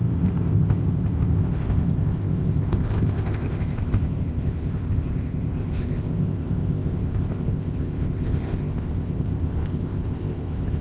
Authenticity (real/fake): fake